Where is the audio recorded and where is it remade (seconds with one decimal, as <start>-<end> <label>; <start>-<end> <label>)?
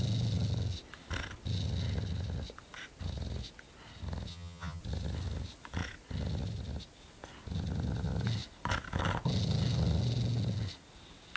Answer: 0.0-4.3 recorded; 4.3-4.8 remade; 4.8-11.4 recorded